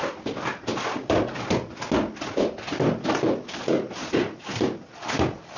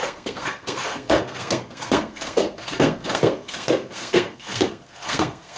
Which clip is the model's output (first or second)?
second